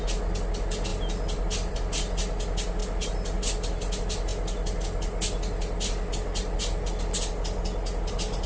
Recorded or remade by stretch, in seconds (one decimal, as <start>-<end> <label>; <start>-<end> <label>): 0.0-8.5 recorded